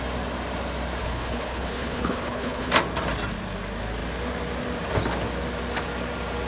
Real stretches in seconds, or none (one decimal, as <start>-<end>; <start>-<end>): 0.0-1.0; 2.7-6.5